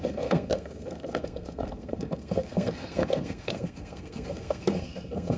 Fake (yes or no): yes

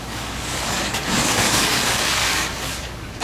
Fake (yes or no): yes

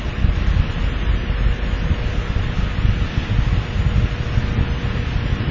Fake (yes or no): no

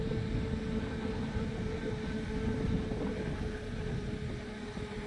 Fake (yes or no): no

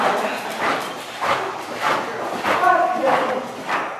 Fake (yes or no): yes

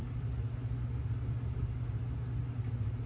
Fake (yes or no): no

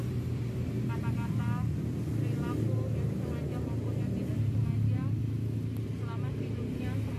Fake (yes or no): no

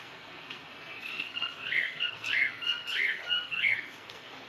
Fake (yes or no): yes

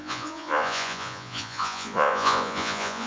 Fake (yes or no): yes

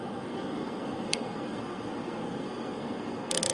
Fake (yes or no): yes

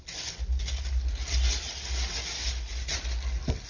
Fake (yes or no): no